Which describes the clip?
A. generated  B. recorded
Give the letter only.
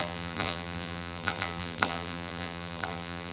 A